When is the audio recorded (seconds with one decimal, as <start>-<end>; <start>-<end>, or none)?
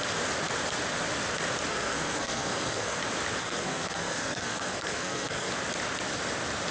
0.0-1.7; 3.0-3.4; 5.5-6.7